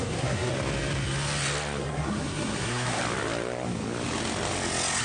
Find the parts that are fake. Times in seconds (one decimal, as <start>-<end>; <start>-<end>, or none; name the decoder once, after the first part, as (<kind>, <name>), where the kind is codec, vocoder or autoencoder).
0.0-0.5 (codec, SNAC); 1.8-3.0